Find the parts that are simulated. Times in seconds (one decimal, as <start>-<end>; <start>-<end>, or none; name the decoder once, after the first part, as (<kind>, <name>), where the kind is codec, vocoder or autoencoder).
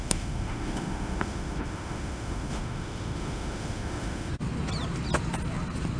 0.0-4.3 (autoencoder, DAC-VAE)